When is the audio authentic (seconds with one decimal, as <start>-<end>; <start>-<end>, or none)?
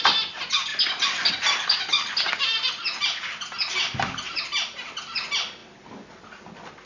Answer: 0.0-6.9